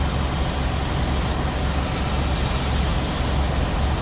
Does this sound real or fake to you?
real